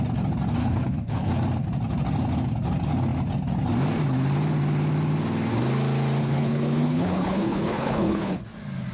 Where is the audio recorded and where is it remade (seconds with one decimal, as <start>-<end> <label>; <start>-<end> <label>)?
0.0-0.6 recorded; 0.6-1.3 remade; 1.3-6.2 recorded; 6.2-8.4 remade; 8.4-8.9 recorded